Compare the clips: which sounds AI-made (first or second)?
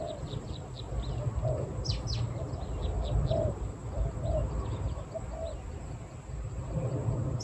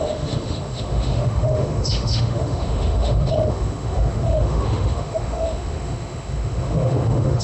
second